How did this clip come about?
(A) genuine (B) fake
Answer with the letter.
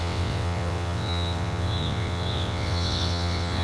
B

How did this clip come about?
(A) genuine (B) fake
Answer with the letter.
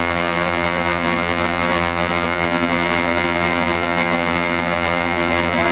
B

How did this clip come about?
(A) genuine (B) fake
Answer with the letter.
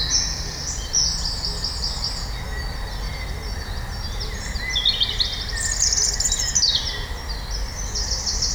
A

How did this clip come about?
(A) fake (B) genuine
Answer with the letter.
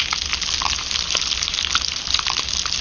B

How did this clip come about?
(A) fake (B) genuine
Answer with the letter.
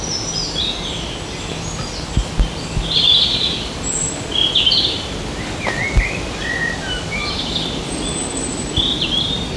A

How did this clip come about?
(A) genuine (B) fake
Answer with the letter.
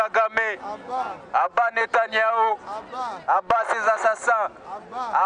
A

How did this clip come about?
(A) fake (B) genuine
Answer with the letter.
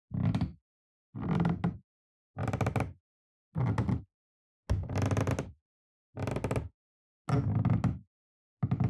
B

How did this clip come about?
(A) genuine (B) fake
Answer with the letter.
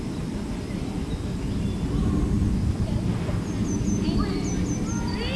A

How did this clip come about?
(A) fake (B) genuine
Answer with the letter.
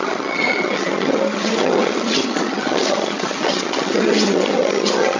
A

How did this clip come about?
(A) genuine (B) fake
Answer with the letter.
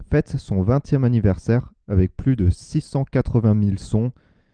A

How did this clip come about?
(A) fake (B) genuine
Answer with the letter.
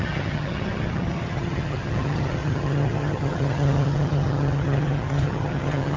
A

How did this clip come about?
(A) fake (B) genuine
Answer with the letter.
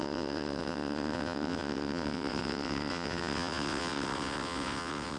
A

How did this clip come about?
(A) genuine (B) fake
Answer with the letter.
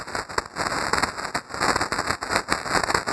A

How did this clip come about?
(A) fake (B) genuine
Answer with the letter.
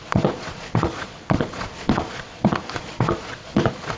A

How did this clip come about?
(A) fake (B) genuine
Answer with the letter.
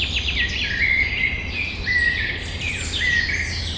B